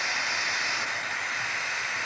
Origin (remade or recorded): recorded